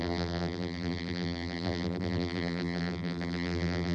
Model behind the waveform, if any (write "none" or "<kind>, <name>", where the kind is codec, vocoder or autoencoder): vocoder, BigVGAN v2